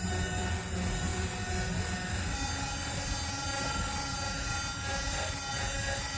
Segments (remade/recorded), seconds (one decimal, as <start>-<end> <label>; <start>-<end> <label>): 0.0-6.2 recorded